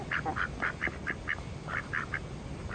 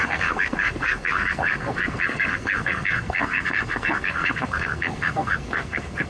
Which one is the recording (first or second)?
first